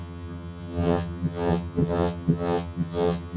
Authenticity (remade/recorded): remade